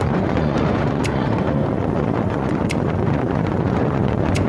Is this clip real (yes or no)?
no